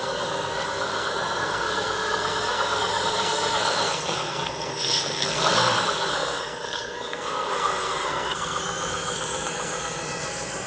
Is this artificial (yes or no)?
yes